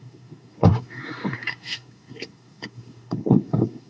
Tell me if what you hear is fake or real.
fake